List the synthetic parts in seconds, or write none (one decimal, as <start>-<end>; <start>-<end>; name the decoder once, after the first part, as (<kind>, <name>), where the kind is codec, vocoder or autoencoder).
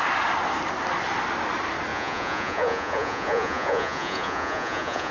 1.9-5.1 (vocoder, Vocos)